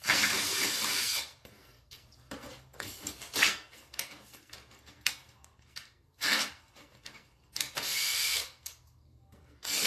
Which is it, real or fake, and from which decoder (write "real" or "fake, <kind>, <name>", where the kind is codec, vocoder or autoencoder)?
fake, codec, SNAC